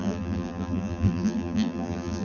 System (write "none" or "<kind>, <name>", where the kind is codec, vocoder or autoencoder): vocoder, BigVGAN v2